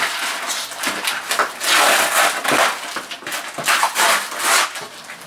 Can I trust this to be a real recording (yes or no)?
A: yes